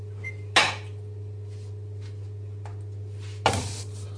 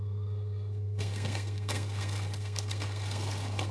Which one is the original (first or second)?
first